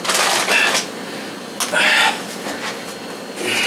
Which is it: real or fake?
real